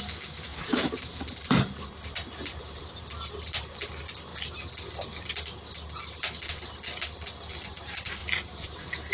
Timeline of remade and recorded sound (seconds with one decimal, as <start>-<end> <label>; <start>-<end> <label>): 0.0-0.5 recorded; 0.5-3.0 remade; 3.0-8.2 recorded; 8.2-9.1 remade

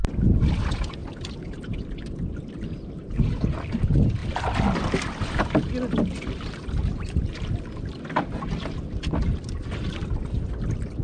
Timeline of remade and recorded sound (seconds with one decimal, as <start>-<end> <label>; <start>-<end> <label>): 0.0-11.0 recorded